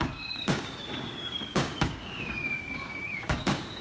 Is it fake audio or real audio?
fake